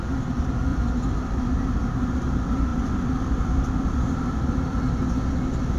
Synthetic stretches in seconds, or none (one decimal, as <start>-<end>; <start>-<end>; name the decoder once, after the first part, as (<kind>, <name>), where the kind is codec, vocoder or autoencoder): 0.7-1.4 (vocoder, BigVGAN v2); 2.7-4.9

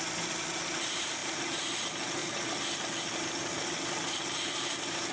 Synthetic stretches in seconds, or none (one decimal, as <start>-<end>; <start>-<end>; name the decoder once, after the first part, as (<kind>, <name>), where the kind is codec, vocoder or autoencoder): 1.2-1.8 (vocoder, BigVGAN v2); 2.2-4.2

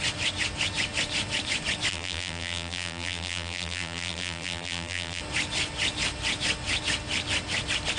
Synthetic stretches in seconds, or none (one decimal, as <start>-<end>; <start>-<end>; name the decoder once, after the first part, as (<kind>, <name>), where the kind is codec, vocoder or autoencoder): 1.9-5.2 (vocoder, BigVGAN v2)

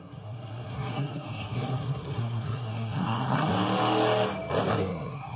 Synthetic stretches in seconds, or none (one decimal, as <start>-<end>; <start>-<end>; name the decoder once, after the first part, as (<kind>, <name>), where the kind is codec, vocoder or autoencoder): 0.0-3.5 (codec, SNAC); 4.7-5.4

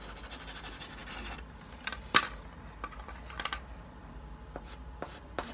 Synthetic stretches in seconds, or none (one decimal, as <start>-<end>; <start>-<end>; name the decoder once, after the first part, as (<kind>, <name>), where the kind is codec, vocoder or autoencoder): none

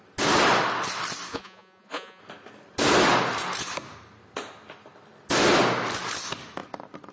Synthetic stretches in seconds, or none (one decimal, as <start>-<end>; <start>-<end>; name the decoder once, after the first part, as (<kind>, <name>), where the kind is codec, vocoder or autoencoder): 1.3-2.2 (vocoder, Vocos)

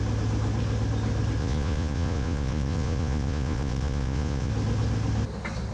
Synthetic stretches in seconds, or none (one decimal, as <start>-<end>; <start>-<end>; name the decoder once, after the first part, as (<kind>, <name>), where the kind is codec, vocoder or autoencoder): 1.4-4.5 (vocoder, Vocos)